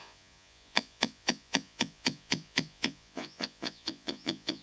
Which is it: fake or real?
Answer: fake